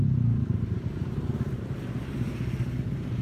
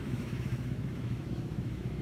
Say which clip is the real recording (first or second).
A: first